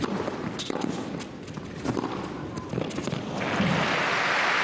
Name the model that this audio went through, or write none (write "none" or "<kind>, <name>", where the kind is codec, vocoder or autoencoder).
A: none